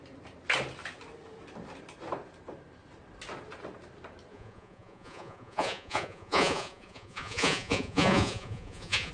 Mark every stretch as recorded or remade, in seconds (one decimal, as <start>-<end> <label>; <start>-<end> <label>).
0.0-4.3 recorded; 4.3-9.1 remade